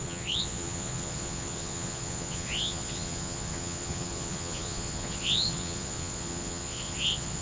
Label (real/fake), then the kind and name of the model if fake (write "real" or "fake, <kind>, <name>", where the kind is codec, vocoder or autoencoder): fake, vocoder, Vocos